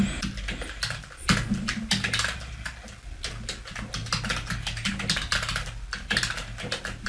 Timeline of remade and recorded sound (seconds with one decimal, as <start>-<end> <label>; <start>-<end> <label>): 0.0-7.1 recorded

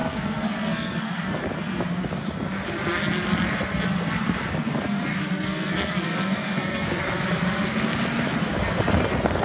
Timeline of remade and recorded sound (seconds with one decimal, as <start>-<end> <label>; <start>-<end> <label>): 0.0-1.4 remade; 1.4-5.1 recorded; 5.1-7.0 remade; 7.0-9.4 recorded

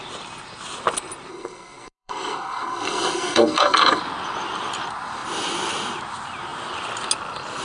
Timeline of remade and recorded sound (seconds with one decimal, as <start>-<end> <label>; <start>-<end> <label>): 0.0-1.3 recorded; 1.3-4.0 remade; 4.0-7.6 recorded

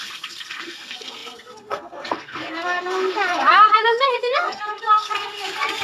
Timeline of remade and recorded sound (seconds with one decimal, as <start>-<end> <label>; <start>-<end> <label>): 0.0-5.8 remade

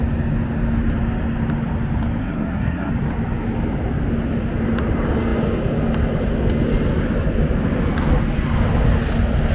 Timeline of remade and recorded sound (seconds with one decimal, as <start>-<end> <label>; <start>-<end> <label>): 0.0-2.2 recorded; 2.2-2.9 remade; 2.9-9.5 recorded

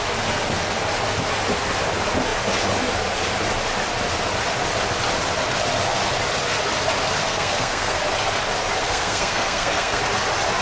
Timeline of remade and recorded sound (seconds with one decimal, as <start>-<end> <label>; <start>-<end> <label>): 0.0-7.2 recorded; 7.2-8.0 remade; 8.0-8.8 recorded; 8.8-10.0 remade; 10.0-10.6 recorded